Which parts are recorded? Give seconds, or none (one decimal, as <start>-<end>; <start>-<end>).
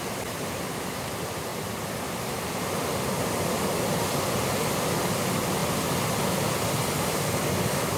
0.0-8.0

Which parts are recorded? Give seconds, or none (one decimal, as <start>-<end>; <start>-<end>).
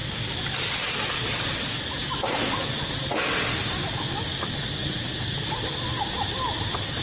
2.3-7.0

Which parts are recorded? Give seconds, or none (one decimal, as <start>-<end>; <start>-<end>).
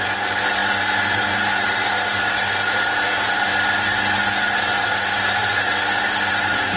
0.0-6.8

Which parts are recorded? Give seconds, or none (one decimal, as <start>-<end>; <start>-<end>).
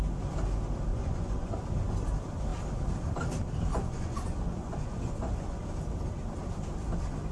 0.0-0.9; 1.5-3.7; 5.6-7.3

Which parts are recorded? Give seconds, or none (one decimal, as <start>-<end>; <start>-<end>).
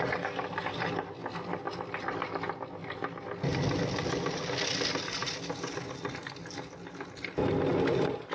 0.0-8.3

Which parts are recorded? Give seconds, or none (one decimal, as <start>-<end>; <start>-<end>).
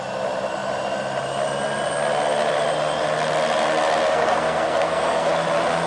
0.0-4.1; 5.3-5.9